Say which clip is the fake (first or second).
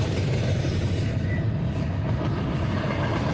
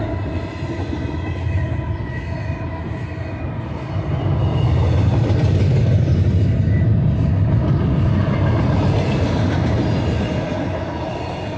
first